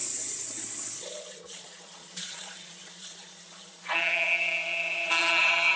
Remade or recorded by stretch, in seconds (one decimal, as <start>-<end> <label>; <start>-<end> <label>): 0.0-5.8 remade